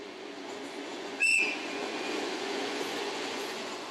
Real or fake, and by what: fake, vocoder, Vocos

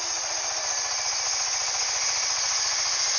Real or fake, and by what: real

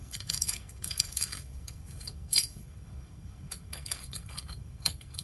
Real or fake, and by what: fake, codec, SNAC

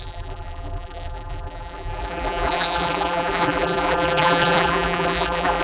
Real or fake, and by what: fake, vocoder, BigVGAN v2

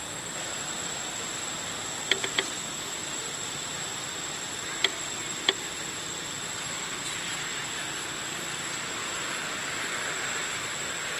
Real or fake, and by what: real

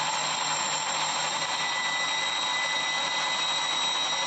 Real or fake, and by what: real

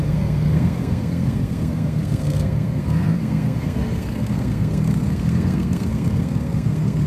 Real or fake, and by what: fake, codec, SNAC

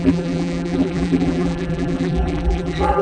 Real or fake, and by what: fake, vocoder, BigVGAN v2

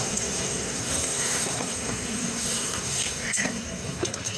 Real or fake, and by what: fake, codec, SNAC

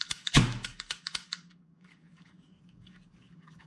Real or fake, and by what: fake, codec, DAC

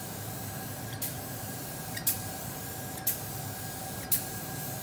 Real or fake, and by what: real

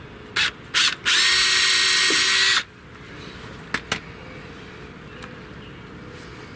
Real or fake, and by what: real